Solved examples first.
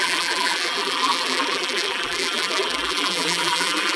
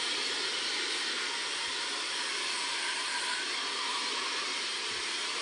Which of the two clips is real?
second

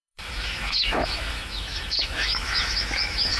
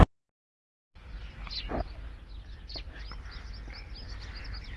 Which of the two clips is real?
second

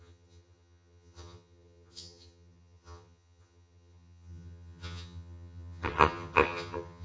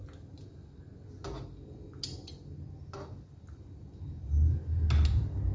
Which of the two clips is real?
second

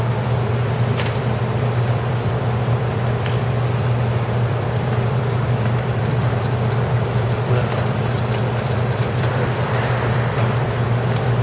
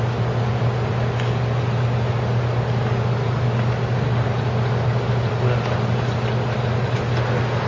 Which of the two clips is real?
second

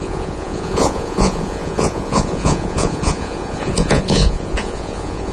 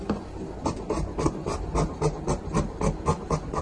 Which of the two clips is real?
second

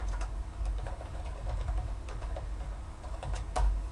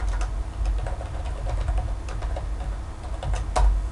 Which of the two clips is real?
second